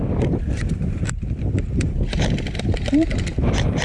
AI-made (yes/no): no